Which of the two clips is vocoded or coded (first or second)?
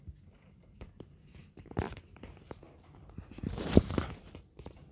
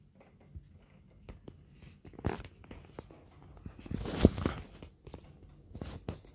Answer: first